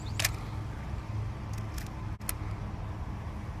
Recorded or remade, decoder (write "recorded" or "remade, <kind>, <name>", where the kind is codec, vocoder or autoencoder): recorded